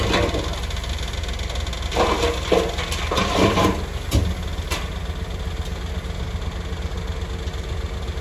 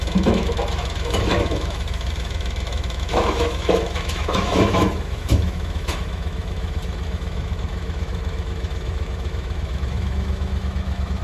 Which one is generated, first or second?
second